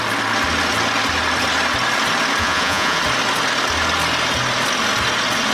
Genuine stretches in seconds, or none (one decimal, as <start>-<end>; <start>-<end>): 0.0-2.4; 3.0-5.5